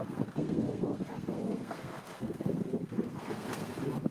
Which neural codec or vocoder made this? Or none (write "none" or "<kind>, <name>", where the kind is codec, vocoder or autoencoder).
codec, SNAC